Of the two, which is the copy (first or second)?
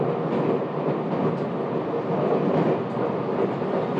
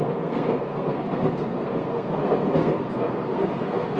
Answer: second